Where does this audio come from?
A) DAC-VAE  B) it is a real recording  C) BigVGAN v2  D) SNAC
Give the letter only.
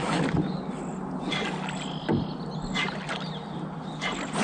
B